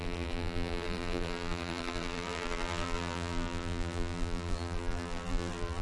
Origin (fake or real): fake